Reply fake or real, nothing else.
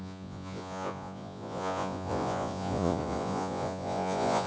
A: fake